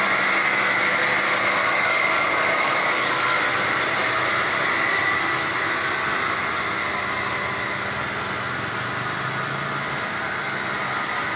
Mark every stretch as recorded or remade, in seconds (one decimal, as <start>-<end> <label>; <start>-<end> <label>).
0.0-1.6 recorded; 1.6-3.2 remade; 3.2-11.4 recorded

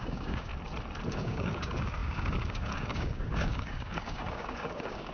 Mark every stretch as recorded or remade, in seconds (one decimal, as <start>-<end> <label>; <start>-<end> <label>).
0.0-0.5 remade; 0.5-1.1 recorded; 1.1-5.1 remade